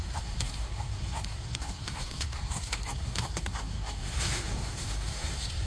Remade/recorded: remade